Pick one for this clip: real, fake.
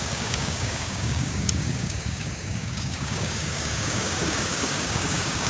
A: fake